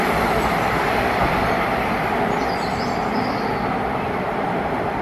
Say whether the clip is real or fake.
real